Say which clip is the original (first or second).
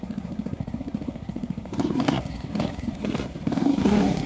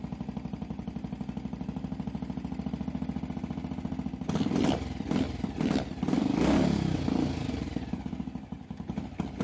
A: second